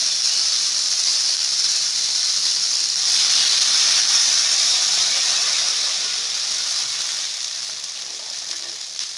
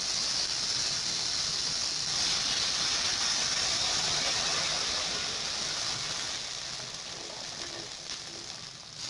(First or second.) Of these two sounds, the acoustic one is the second